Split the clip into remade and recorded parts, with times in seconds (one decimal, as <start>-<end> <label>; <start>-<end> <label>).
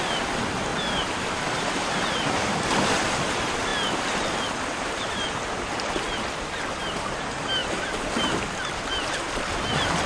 0.0-0.7 recorded; 0.7-2.3 remade; 2.3-10.1 recorded